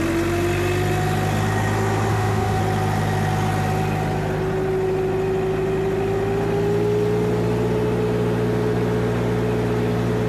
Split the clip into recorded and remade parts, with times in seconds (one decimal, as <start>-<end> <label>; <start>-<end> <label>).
0.0-2.1 recorded; 2.1-2.6 remade; 2.6-10.3 recorded